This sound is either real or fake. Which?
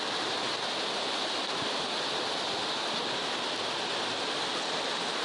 real